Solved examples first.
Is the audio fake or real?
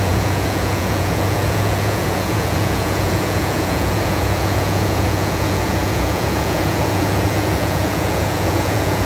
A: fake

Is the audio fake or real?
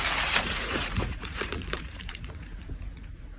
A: fake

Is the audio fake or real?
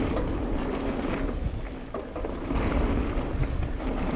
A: real